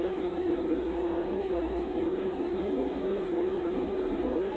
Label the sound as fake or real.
fake